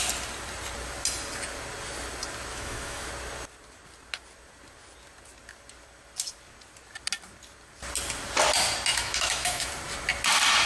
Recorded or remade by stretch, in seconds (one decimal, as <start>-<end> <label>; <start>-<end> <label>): 0.0-2.5 recorded; 2.5-3.1 remade; 3.1-8.9 recorded; 8.9-9.7 remade; 9.7-10.7 recorded